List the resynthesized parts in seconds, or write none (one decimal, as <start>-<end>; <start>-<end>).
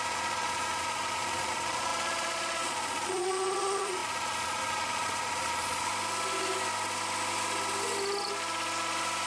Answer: 0.0-5.9